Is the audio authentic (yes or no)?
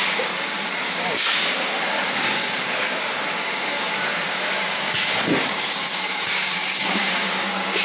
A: no